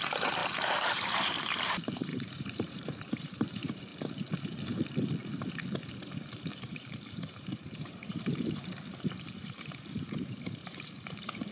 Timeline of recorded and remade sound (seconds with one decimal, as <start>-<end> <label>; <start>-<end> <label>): 0.0-3.9 remade; 3.9-5.9 recorded; 5.9-11.5 remade